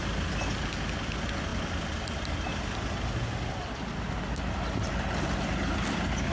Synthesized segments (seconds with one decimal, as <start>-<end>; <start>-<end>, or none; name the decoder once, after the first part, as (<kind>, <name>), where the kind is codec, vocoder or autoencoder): none

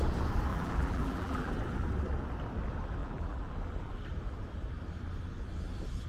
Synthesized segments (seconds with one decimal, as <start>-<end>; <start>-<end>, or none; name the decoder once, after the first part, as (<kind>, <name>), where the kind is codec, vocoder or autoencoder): 0.5-1.5 (vocoder, BigVGAN v2); 3.0-3.5

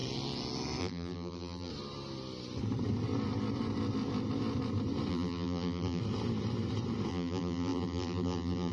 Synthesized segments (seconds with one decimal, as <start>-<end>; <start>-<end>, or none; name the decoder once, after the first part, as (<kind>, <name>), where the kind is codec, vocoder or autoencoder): 0.8-1.7 (vocoder, BigVGAN v2); 5.1-6.0; 7.1-8.7